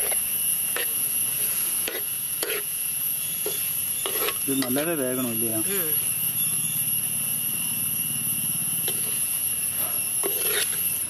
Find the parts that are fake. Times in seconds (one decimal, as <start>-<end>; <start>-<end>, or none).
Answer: 0.0-4.0; 8.6-9.5